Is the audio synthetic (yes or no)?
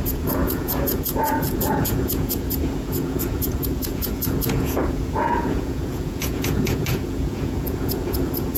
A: yes